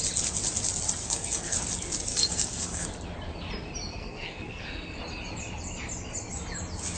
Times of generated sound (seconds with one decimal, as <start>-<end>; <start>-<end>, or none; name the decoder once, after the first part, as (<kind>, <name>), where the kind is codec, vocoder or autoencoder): 1.0-1.6 (codec, SNAC); 2.1-2.9; 3.9-5.0